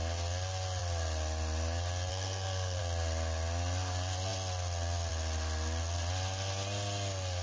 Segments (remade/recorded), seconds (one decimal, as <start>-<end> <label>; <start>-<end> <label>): 0.0-2.1 recorded; 2.1-2.8 remade; 2.8-7.4 recorded